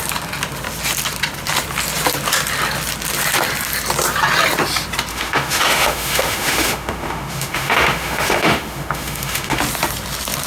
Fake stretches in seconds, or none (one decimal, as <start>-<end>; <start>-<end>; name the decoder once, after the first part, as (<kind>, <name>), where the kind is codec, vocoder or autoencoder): 5.1-9.6 (autoencoder, DAC-VAE)